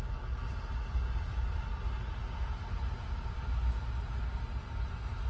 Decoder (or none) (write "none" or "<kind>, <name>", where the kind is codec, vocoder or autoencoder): none